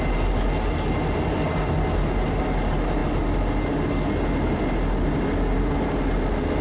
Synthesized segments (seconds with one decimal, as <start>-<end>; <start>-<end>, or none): none